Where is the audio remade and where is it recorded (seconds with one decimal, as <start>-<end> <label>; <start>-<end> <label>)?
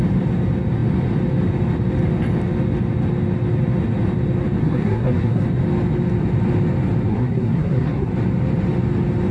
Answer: 0.0-4.6 recorded; 4.6-5.4 remade; 5.4-7.1 recorded; 7.1-8.1 remade; 8.1-9.3 recorded